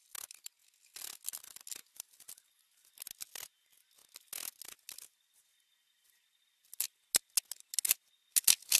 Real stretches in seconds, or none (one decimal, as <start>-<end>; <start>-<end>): 0.0-8.8